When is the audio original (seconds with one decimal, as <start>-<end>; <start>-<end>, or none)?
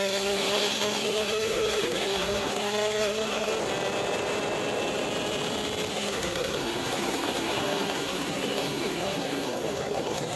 3.5-5.9